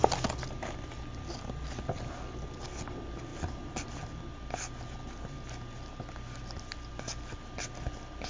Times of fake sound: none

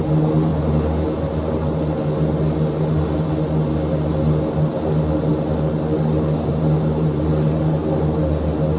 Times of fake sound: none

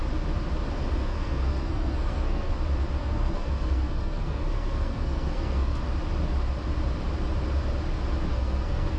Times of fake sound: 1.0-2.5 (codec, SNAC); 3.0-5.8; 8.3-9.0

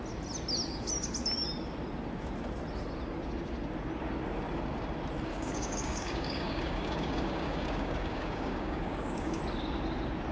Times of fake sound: 5.3-9.4 (codec, DAC)

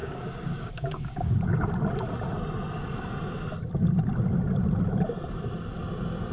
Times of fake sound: 0.0-1.4 (codec, DAC)

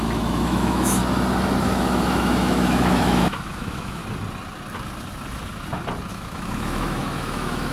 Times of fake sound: 0.0-1.0 (autoencoder, DAC-VAE); 1.6-4.0; 6.1-7.7